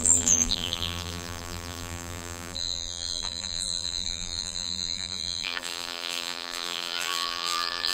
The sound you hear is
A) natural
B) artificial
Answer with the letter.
B